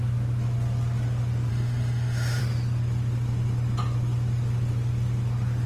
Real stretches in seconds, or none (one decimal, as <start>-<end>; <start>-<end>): 0.0-1.5; 2.4-5.7